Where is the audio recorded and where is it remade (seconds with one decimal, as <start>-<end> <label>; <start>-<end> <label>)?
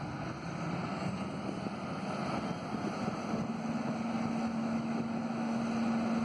0.0-4.6 recorded; 4.6-5.6 remade; 5.6-6.2 recorded